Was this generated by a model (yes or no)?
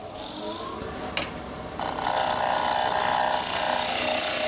no